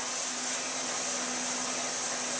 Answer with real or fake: real